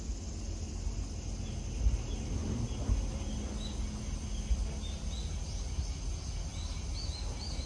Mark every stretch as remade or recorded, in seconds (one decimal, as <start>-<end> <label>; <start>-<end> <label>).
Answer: 0.0-7.7 recorded